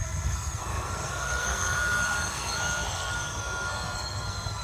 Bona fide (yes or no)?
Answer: no